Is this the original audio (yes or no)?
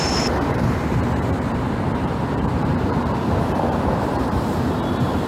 no